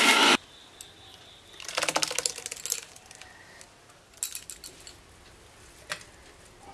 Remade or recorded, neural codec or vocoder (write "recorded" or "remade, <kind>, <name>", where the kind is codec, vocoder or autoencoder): recorded